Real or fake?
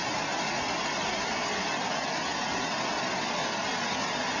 fake